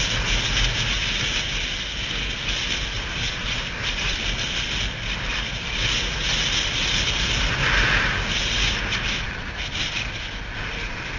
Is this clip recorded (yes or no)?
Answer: yes